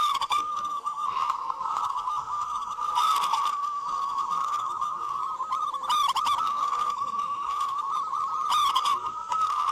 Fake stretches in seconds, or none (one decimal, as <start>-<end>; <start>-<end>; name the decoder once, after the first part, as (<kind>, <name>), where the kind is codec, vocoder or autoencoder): 0.0-5.2 (codec, SNAC); 6.4-7.9; 8.7-9.7

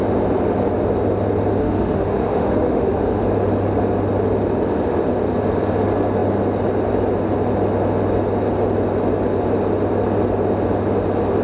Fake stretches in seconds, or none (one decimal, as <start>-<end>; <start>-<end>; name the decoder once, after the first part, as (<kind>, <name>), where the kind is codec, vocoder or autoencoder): 1.6-3.2 (autoencoder, DAC-VAE)